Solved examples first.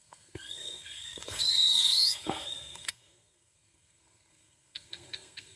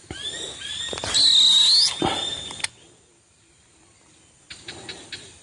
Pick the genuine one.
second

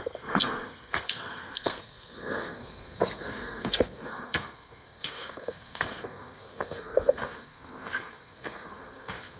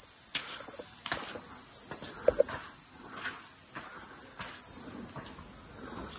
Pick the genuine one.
second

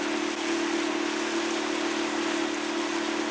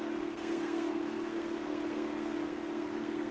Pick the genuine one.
first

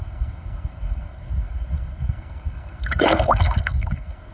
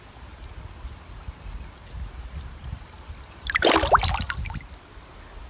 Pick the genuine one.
second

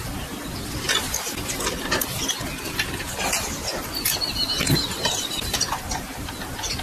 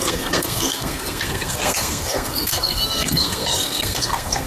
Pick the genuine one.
first